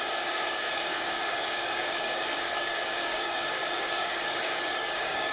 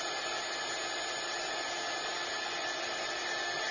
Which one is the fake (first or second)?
first